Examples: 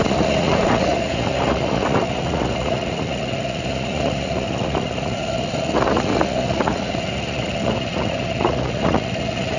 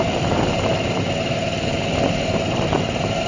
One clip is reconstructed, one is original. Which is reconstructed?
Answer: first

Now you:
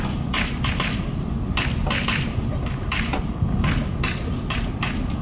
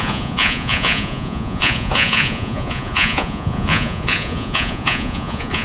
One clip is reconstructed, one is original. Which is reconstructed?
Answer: second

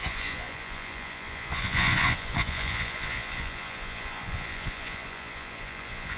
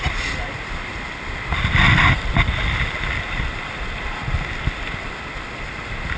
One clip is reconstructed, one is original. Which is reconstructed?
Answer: first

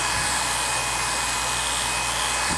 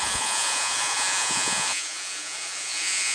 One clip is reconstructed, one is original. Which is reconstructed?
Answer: second